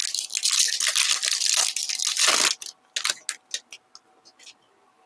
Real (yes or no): yes